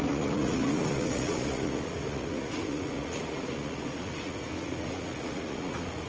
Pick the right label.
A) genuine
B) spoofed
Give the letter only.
B